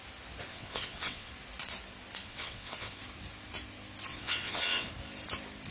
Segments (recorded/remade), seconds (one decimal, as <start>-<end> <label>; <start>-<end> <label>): 0.0-0.5 recorded; 0.5-1.3 remade; 1.3-2.2 recorded; 2.2-3.0 remade; 3.0-4.1 recorded; 4.1-4.9 remade; 4.9-5.7 recorded